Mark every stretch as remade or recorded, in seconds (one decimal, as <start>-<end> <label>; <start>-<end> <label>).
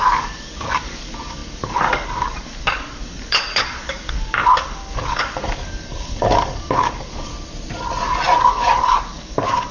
0.0-7.3 remade; 7.3-8.4 recorded; 8.4-9.7 remade